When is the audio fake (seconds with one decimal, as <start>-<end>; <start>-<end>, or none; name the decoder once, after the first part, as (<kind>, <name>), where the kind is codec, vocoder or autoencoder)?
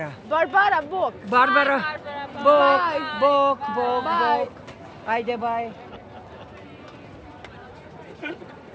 7.6-8.7 (vocoder, Vocos)